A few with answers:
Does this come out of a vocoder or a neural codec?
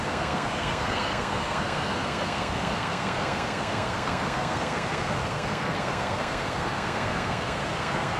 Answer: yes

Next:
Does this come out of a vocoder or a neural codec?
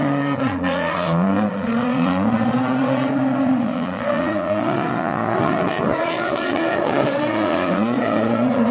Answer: yes